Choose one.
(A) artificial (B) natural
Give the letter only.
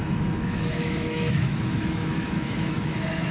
A